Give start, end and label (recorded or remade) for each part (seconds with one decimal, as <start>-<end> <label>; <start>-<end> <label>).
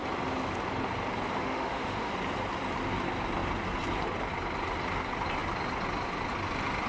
0.0-1.4 recorded; 1.4-2.1 remade; 2.1-6.9 recorded